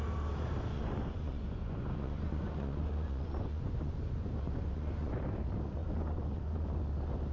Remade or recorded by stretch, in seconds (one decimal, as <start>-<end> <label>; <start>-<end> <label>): 0.0-0.7 recorded; 0.7-5.1 remade; 5.1-5.8 recorded; 5.8-6.8 remade; 6.8-7.3 recorded